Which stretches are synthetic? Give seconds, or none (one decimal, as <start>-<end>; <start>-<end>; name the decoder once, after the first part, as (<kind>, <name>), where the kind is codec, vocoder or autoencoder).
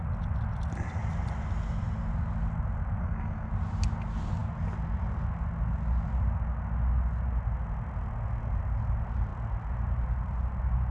3.0-3.5 (codec, SNAC)